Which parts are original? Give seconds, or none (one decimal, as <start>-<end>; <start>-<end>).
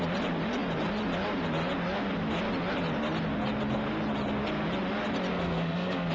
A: 0.0-5.3